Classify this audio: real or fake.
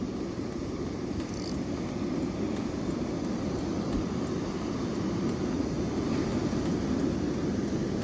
real